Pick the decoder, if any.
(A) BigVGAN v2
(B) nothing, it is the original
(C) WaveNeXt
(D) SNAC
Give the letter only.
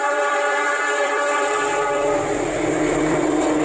A